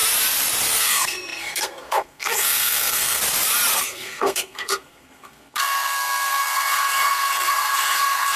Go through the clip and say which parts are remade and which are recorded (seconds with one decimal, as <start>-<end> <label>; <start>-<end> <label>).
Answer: 0.0-0.8 recorded; 0.8-3.2 remade; 3.2-3.8 recorded; 3.8-8.4 remade